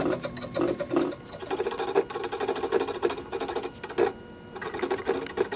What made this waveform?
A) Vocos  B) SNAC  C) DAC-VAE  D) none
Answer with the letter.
D